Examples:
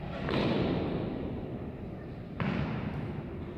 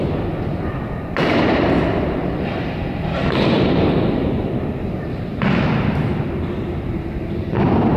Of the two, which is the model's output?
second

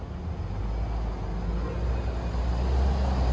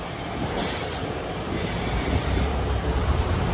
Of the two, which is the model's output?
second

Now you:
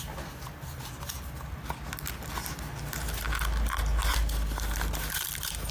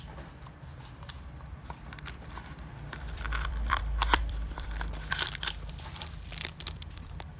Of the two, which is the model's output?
second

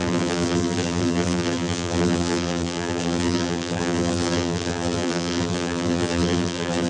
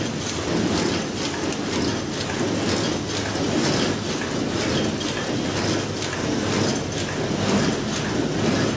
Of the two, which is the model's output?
first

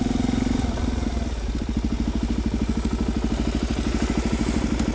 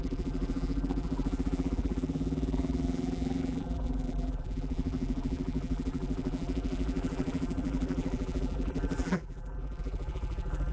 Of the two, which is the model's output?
second